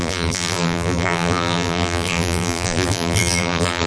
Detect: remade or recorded remade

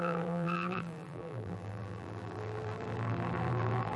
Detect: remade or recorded remade